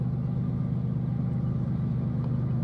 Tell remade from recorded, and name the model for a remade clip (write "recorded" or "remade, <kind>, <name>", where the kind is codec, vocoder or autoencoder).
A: recorded